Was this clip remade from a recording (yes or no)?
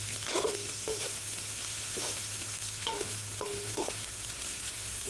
yes